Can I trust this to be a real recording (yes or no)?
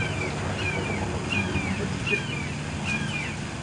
yes